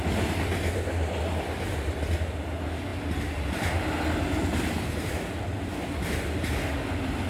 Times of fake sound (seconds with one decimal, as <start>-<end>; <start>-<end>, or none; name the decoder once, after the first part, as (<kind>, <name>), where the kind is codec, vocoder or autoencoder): none